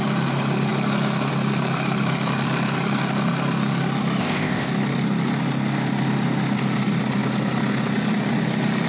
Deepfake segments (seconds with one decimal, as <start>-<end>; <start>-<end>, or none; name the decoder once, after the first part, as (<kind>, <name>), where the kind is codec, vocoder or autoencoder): 4.2-4.7 (codec, ZipCodec)